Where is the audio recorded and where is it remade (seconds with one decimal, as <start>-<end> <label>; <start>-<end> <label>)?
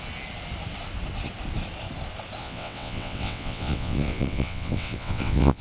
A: 0.0-2.4 recorded; 2.4-5.6 remade